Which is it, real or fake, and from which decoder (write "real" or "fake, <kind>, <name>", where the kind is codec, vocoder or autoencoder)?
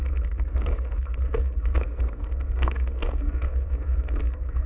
fake, codec, SNAC